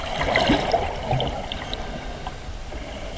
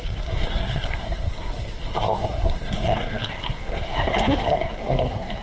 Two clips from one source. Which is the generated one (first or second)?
second